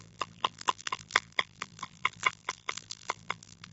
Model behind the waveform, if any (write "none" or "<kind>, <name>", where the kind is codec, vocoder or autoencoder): vocoder, BigVGAN v2